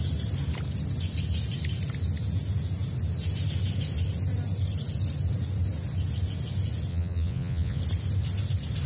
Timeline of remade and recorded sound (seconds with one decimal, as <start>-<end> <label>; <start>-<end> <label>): 0.0-6.9 recorded; 6.9-7.8 remade; 7.8-8.9 recorded

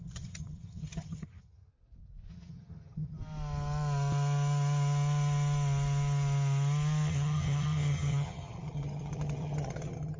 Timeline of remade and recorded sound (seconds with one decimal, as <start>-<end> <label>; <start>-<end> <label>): 0.0-1.7 remade; 1.7-2.3 recorded; 2.3-3.2 remade; 3.2-7.1 recorded; 7.1-10.2 remade